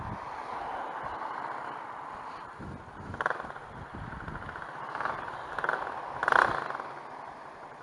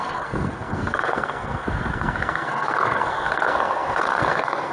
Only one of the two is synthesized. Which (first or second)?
second